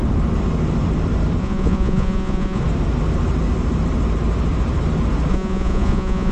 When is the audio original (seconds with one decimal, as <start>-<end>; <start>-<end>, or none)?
0.0-1.4; 2.6-5.3